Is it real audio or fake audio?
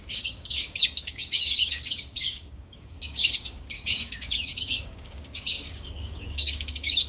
fake